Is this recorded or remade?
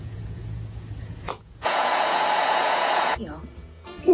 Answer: remade